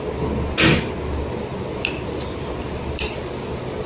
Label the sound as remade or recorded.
recorded